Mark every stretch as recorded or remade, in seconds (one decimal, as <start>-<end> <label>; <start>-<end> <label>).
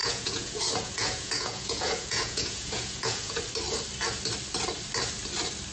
0.0-3.4 remade; 3.4-5.7 recorded